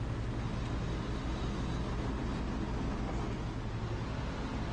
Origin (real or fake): real